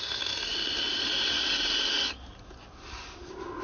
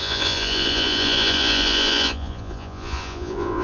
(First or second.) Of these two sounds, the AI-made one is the second